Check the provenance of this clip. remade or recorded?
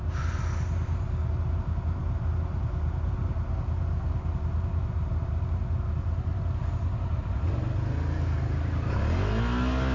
recorded